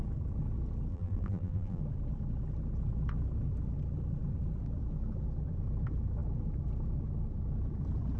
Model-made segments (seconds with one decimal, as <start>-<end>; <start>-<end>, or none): 0.9-1.8